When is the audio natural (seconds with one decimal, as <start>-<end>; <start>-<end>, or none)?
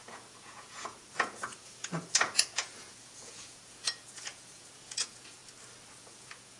5.4-6.0